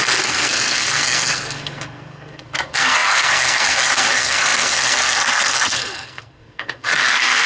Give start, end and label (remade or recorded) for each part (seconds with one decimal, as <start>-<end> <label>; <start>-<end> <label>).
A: 0.0-7.5 remade